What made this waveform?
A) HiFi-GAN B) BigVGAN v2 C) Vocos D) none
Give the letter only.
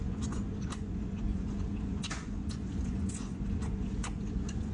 C